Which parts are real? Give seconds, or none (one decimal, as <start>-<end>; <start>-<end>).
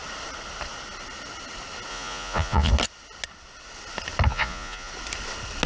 0.0-1.9; 2.7-4.3; 4.9-5.7